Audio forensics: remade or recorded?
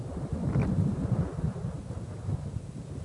recorded